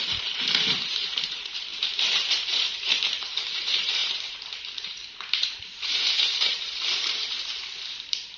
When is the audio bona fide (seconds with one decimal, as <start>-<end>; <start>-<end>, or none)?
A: 1.7-2.3